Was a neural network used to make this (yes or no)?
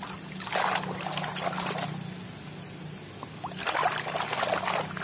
no